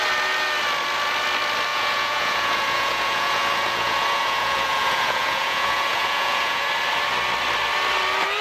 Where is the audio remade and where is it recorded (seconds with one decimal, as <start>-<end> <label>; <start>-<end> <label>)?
0.0-1.7 recorded; 1.7-6.7 remade; 6.7-8.4 recorded